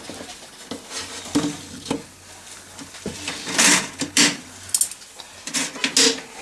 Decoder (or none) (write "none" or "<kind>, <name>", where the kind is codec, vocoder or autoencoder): none